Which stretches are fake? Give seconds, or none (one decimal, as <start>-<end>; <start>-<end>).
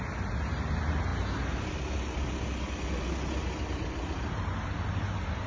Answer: none